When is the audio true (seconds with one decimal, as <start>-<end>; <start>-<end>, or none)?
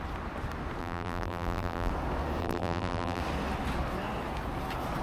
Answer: 0.0-0.8; 1.9-2.4; 3.2-5.0